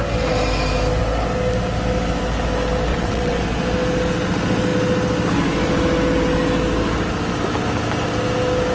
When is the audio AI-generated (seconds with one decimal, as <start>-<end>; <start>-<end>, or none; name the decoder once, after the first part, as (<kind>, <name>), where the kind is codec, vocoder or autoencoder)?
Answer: 2.9-3.4 (vocoder, WaveNeXt)